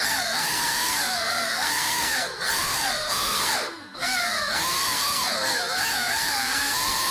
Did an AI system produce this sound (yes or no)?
yes